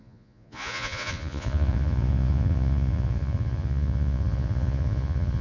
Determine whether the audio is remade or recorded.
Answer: remade